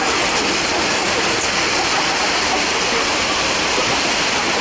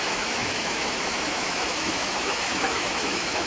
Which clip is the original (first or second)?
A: first